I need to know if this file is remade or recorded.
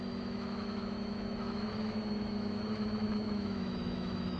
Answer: remade